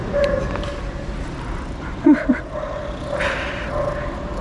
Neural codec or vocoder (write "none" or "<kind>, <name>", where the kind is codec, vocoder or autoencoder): vocoder, BigVGAN v2